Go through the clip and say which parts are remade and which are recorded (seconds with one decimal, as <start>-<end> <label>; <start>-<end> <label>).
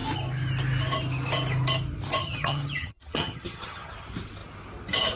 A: 0.0-2.2 recorded; 2.2-3.9 remade; 3.9-5.2 recorded